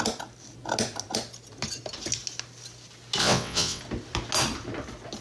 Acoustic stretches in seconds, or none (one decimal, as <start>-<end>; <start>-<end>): 0.0-3.2; 3.8-5.2